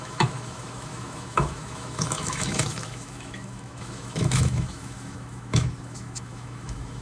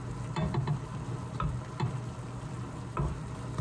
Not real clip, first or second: first